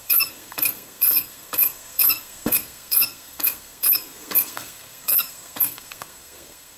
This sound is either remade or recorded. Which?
remade